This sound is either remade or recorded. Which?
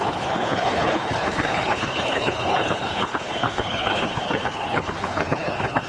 remade